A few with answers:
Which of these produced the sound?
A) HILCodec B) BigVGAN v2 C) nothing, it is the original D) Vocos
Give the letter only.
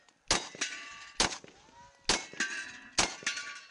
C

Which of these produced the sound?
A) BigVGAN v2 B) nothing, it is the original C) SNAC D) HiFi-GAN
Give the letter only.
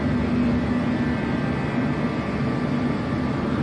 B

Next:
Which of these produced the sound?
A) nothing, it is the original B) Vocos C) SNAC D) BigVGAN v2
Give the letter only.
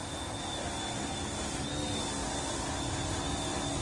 A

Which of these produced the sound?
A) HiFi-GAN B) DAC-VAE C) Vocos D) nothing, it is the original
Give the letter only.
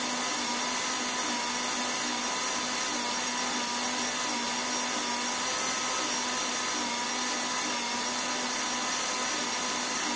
D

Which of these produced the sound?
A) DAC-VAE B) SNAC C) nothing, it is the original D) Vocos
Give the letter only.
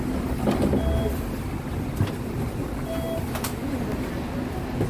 C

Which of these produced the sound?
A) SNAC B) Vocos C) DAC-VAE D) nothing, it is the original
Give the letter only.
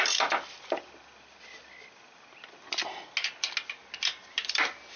D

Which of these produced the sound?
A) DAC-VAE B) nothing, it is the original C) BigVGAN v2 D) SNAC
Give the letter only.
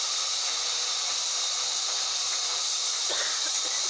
C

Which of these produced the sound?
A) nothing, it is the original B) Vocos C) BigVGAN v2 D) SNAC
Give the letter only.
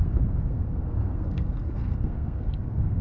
D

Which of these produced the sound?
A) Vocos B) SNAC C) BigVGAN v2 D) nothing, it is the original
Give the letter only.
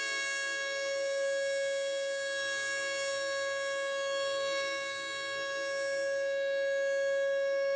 D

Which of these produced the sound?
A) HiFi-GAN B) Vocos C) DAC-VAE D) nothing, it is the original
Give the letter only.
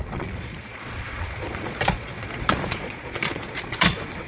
B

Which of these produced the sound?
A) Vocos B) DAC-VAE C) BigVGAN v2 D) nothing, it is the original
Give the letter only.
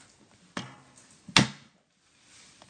D